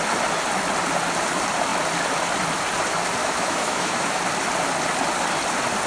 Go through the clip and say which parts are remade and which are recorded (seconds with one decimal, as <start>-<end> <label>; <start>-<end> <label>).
0.0-3.2 recorded; 3.2-4.2 remade; 4.2-5.9 recorded

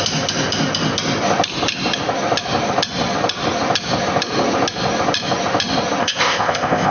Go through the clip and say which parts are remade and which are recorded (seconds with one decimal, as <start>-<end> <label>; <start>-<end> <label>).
0.0-6.0 recorded; 6.0-6.9 remade

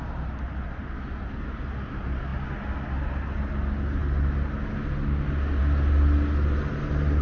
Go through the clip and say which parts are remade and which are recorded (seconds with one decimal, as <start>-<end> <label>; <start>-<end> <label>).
0.0-7.2 recorded

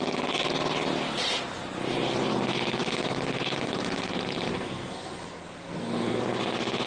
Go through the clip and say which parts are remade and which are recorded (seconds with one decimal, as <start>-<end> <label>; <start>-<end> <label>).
0.0-4.5 recorded; 4.5-6.2 remade; 6.2-6.9 recorded

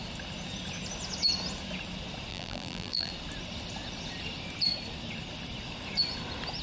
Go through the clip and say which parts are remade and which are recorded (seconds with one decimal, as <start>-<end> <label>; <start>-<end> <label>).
0.0-2.3 recorded; 2.3-3.1 remade; 3.1-6.6 recorded

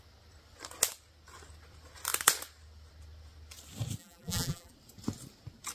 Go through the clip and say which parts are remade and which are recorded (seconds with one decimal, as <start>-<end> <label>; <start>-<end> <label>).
0.0-4.0 recorded; 4.0-4.7 remade; 4.7-5.7 recorded

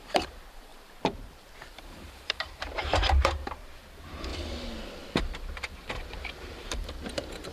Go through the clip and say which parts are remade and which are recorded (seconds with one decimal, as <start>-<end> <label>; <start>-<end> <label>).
0.0-4.3 remade; 4.3-5.2 recorded; 5.2-7.5 remade

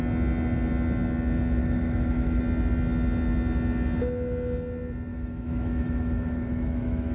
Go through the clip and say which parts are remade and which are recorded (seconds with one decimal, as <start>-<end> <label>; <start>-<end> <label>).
0.0-1.6 recorded; 1.6-2.4 remade; 2.4-5.1 recorded; 5.1-7.1 remade